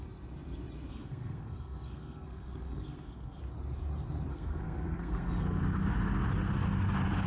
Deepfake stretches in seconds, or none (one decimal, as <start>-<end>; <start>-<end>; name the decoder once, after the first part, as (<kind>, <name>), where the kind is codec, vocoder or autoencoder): 0.9-3.4 (codec, SNAC); 4.3-5.6